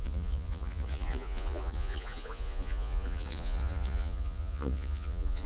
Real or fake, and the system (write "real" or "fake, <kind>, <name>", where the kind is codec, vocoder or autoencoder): fake, vocoder, Vocos